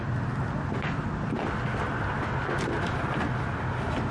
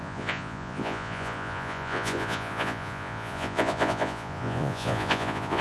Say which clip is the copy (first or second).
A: second